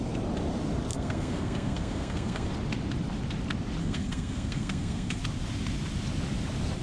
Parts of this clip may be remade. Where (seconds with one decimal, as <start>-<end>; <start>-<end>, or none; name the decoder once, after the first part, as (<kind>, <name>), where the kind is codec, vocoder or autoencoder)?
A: 0.9-2.5 (codec, SNAC); 3.8-5.2